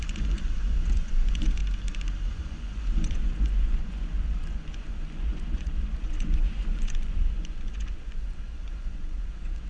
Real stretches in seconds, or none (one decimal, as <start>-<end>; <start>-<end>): 1.6-2.3